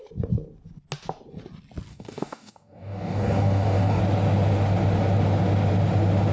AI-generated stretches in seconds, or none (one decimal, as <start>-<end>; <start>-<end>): 1.9-4.0